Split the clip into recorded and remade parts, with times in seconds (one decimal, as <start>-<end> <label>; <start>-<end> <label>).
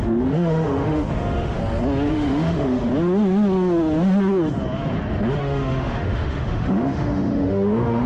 0.0-1.6 remade; 1.6-2.1 recorded; 2.1-2.9 remade; 2.9-5.4 recorded; 5.4-8.1 remade